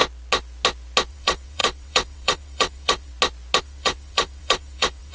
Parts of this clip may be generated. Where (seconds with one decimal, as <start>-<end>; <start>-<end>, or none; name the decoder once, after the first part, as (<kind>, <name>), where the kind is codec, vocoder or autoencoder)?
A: 1.1-3.1 (vocoder, WaveNeXt); 3.6-5.1